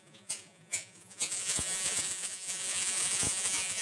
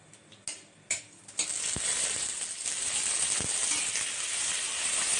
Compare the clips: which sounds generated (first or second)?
first